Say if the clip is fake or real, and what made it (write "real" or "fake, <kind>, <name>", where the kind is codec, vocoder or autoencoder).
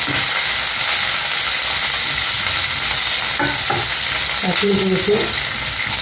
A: real